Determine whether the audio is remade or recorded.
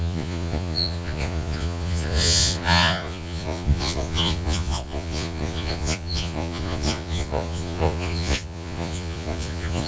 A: remade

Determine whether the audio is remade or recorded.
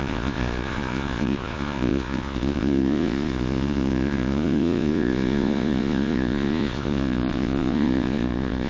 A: remade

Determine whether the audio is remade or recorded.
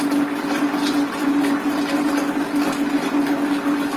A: recorded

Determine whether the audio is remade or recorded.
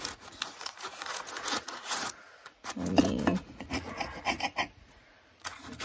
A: remade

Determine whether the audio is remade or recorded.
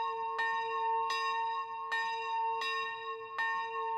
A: recorded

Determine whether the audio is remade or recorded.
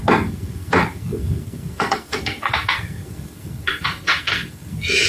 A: remade